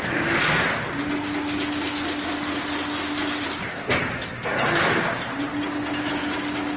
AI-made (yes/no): no